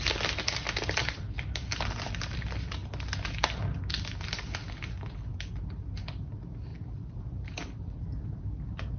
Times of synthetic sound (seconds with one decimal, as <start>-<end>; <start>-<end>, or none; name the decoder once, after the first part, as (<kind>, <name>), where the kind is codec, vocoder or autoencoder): none